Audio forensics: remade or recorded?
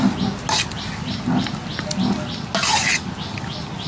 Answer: recorded